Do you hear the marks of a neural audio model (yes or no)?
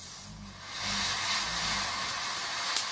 no